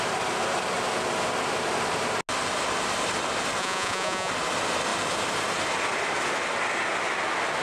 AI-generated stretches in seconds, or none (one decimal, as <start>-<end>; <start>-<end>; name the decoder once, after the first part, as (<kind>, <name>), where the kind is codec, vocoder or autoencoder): 3.6-4.3 (vocoder, Vocos)